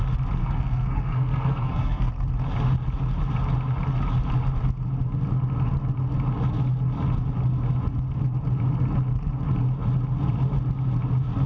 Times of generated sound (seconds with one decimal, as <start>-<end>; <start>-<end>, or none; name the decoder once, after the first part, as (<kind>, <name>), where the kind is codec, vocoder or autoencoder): 0.4-2.1 (codec, SNAC)